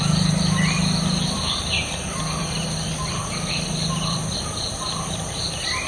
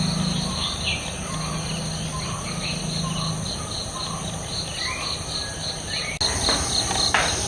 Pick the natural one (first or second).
second